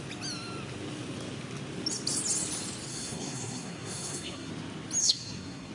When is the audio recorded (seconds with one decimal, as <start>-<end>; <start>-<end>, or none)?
0.0-2.9; 4.5-5.0